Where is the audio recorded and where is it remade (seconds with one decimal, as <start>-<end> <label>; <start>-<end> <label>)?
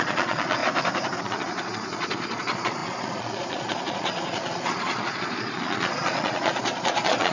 0.0-0.6 remade; 0.6-1.2 recorded; 1.2-7.3 remade